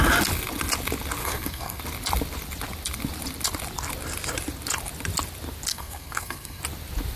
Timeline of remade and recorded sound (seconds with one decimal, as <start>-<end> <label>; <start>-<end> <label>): 0.0-1.2 recorded; 1.2-1.8 remade; 1.8-5.7 recorded; 5.7-6.6 remade; 6.6-7.2 recorded